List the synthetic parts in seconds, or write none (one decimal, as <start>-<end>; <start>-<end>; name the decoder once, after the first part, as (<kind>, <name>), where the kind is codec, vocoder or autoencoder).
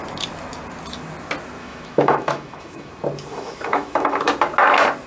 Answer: 1.6-2.9 (autoencoder, DAC-VAE); 3.3-4.3